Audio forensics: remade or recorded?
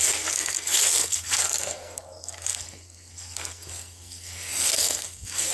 remade